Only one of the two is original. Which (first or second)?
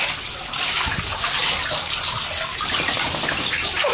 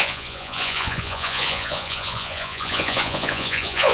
first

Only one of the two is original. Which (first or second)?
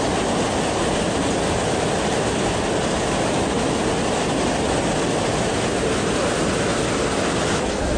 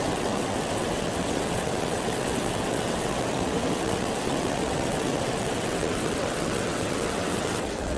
first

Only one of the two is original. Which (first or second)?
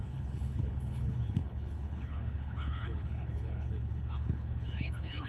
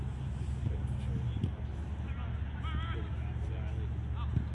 second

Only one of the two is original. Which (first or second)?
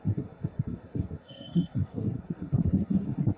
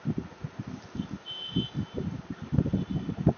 second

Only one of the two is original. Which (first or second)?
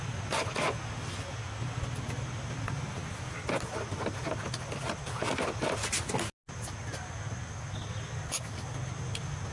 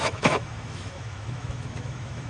first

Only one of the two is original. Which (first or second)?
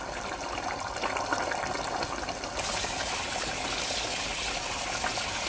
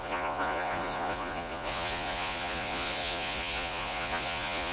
first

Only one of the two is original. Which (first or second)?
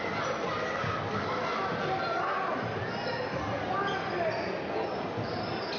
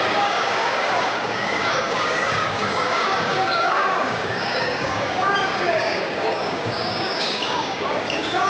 first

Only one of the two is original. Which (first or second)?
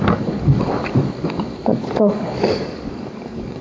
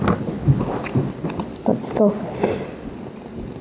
second